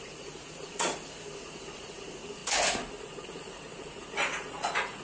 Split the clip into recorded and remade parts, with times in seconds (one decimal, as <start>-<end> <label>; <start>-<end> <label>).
0.0-2.4 remade; 2.4-3.0 recorded; 3.0-5.0 remade